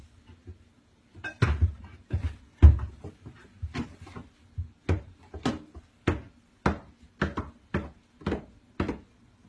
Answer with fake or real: real